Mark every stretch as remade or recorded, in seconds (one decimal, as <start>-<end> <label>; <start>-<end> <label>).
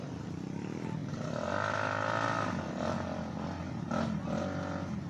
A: 0.0-5.1 recorded